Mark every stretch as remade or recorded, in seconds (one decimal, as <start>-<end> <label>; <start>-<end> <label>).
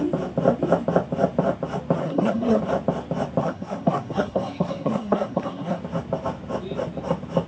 0.0-2.0 recorded; 2.0-2.6 remade; 2.6-3.4 recorded; 3.4-5.8 remade; 5.8-7.5 recorded